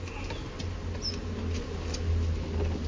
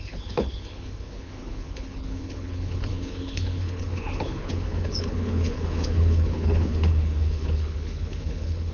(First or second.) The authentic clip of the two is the first